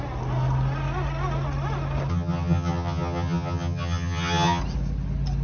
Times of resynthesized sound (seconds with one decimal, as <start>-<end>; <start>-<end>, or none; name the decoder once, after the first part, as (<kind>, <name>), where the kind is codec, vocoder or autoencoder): 2.1-4.6 (vocoder, HiFi-GAN)